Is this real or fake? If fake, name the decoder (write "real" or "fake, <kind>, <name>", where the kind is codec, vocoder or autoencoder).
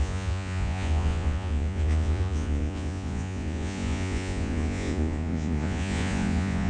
fake, vocoder, Vocos